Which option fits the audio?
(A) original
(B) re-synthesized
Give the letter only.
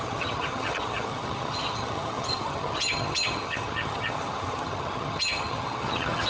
B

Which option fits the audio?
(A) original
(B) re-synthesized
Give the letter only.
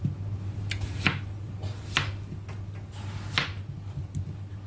A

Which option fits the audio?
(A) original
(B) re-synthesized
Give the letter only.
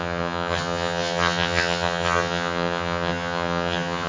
B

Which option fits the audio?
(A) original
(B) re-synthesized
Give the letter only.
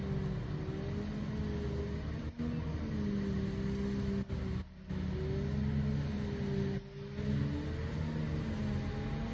A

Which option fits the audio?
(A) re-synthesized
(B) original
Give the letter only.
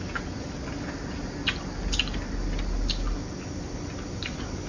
B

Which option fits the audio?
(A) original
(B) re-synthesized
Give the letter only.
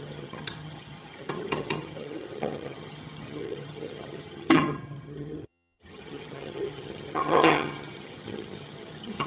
B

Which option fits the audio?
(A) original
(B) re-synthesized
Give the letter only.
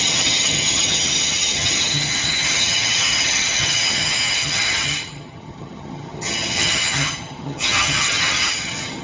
B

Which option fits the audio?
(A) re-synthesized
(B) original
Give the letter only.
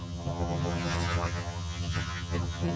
A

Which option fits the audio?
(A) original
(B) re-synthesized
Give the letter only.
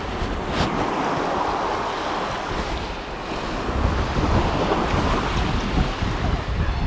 A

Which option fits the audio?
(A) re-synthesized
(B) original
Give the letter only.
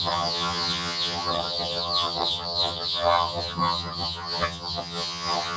A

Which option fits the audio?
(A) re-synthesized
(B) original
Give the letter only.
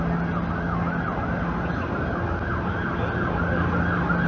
B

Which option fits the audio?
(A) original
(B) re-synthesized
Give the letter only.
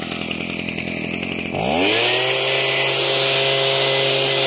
A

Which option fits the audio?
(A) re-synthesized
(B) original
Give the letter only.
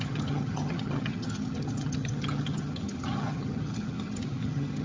A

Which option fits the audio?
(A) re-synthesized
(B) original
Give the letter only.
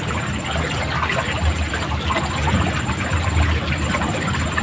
B